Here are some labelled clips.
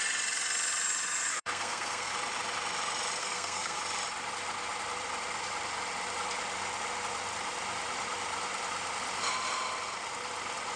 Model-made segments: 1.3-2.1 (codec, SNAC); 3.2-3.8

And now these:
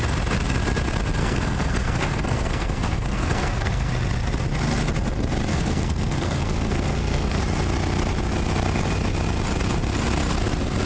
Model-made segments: 1.2-3.9 (codec, SNAC); 5.5-7.4

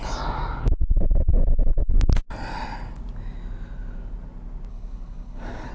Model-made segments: 4.7-5.7 (codec, HILCodec)

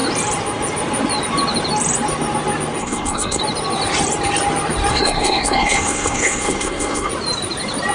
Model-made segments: 2.8-3.4 (codec, SNAC); 4.9-7.1

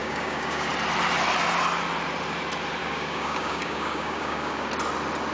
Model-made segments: 0.0-0.7 (codec, DAC); 2.8-4.7